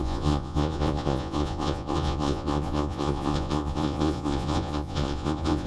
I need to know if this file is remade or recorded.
remade